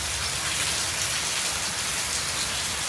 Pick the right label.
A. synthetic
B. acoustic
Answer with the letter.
B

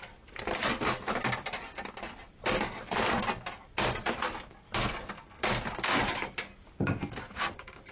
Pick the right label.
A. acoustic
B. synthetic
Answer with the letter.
A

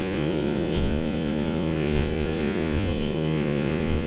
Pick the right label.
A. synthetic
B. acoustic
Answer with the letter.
A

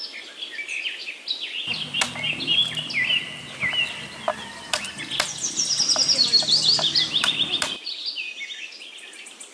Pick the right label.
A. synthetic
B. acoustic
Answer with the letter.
B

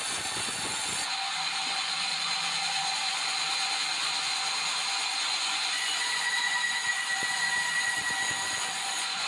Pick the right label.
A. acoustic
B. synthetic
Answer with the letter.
B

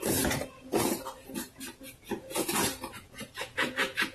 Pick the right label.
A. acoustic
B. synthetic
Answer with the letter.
B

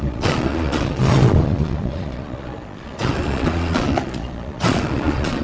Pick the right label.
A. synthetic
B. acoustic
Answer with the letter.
A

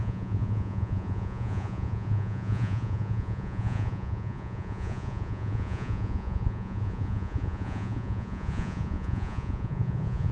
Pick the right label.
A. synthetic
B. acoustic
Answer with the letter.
A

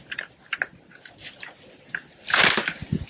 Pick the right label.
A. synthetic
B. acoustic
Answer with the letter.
B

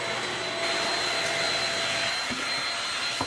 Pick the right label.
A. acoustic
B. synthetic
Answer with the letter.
A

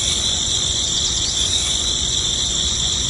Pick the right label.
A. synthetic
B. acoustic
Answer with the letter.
A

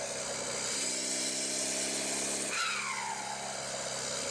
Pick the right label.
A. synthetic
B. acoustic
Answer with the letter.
B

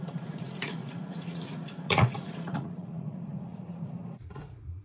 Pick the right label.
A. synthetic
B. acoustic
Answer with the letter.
A